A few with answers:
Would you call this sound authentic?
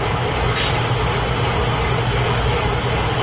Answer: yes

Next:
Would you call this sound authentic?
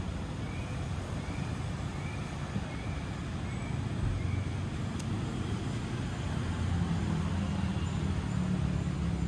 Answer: yes